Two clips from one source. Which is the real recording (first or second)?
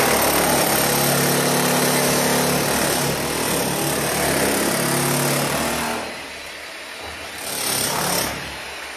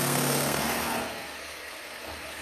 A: first